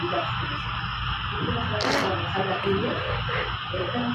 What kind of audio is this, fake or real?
real